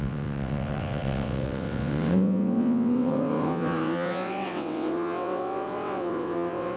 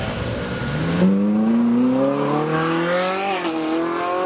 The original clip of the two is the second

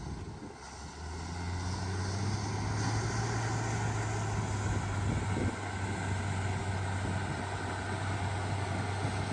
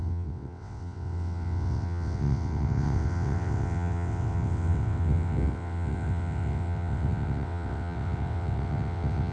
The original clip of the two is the first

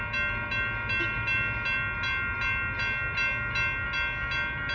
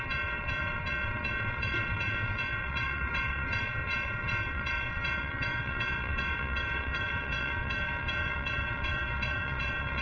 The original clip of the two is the first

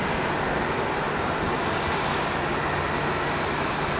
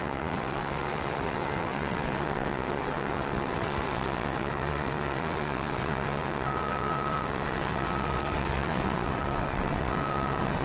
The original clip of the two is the first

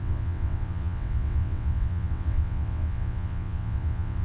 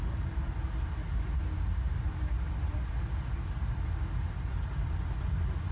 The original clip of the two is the second